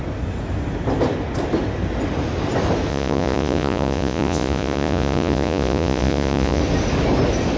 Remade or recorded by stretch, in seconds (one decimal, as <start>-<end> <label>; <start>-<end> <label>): 0.0-2.9 recorded; 2.9-6.6 remade; 6.6-7.6 recorded